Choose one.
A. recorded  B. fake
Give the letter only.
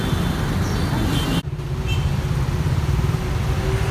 A